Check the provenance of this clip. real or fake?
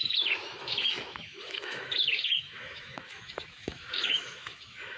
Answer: fake